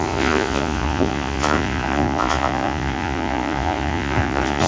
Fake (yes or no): yes